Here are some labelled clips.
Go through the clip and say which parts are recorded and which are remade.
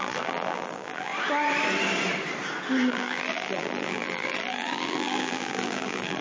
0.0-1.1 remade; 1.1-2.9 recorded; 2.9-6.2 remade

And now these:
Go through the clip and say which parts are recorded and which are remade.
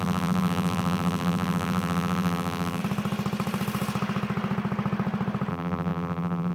0.0-2.8 remade; 2.8-5.5 recorded; 5.5-6.5 remade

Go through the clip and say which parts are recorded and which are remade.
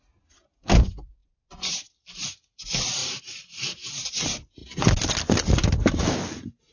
0.0-3.0 recorded; 3.0-4.1 remade; 4.1-6.7 recorded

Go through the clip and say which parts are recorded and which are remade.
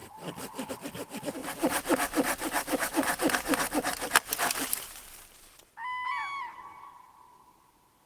0.0-0.7 remade; 0.7-1.4 recorded; 1.4-5.4 remade; 5.4-8.1 recorded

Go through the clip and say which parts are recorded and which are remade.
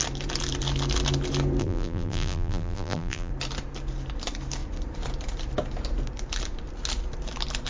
0.0-1.6 recorded; 1.6-3.3 remade; 3.3-7.7 recorded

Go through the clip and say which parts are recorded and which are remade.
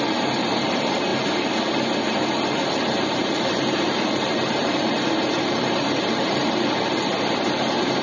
0.0-1.1 remade; 1.1-2.2 recorded; 2.2-8.0 remade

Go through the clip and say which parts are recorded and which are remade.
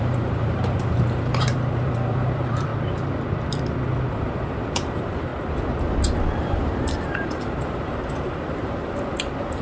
0.0-2.7 remade; 2.7-4.1 recorded; 4.1-5.3 remade; 5.3-6.4 recorded; 6.4-9.6 remade